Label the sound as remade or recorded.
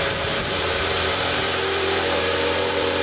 remade